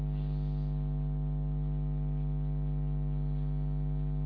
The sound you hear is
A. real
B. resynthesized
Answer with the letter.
A